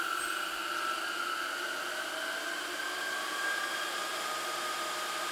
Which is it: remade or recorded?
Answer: recorded